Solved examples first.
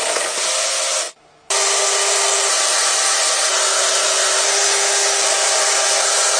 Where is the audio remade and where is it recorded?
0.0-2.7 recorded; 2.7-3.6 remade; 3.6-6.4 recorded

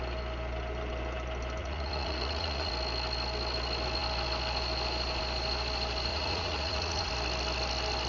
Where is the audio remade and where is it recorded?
0.0-1.6 recorded; 1.6-2.7 remade; 2.7-6.1 recorded; 6.1-7.1 remade; 7.1-8.1 recorded

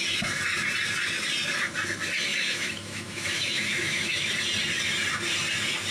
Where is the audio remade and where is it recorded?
0.0-2.3 recorded; 2.3-4.3 remade; 4.3-5.9 recorded

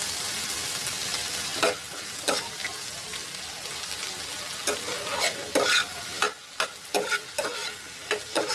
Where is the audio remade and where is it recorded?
0.0-8.5 recorded